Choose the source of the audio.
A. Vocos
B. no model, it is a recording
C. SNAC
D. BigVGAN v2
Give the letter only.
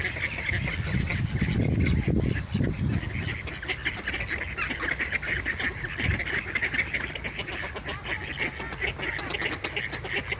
B